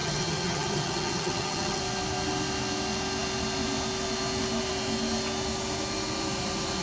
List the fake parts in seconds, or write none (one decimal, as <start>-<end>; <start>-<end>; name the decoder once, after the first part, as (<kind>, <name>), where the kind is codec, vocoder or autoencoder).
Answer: 0.0-1.8 (vocoder, HiFi-GAN)